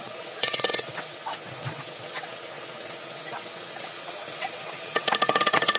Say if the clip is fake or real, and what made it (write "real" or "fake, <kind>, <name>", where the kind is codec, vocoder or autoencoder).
fake, vocoder, WaveNeXt